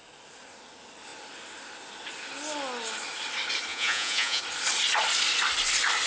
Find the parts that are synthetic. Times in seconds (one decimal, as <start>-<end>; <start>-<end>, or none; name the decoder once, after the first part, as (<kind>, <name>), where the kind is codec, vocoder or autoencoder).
3.7-4.4 (vocoder, Vocos)